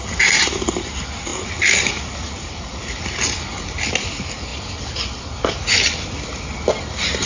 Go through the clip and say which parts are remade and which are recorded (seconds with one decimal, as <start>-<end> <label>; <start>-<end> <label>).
0.0-7.3 recorded